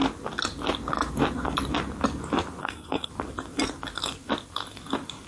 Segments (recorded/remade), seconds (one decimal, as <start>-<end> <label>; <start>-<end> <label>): 0.0-2.6 recorded; 2.6-3.1 remade; 3.1-5.3 recorded